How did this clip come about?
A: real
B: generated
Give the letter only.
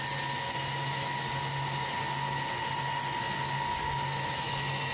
A